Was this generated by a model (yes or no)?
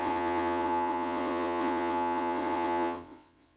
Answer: yes